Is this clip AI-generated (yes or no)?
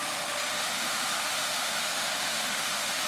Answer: yes